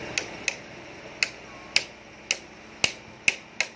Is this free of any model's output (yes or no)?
yes